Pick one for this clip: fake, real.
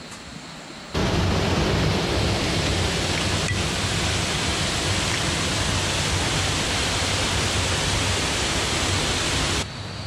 real